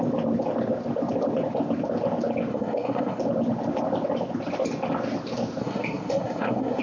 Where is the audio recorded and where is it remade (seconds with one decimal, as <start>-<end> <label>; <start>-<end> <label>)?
0.0-2.5 recorded; 2.5-3.2 remade; 3.2-5.6 recorded; 5.6-6.8 remade